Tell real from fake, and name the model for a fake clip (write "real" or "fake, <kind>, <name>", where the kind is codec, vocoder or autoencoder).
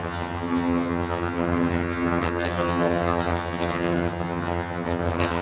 fake, vocoder, HiFi-GAN